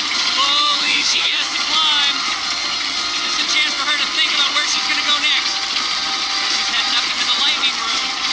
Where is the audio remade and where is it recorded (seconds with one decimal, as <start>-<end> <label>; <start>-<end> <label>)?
0.0-0.6 recorded; 0.6-1.6 remade; 1.6-8.3 recorded